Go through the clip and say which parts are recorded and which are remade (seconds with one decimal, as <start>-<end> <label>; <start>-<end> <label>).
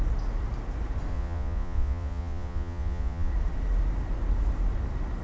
0.0-1.1 recorded; 1.1-3.3 remade; 3.3-5.2 recorded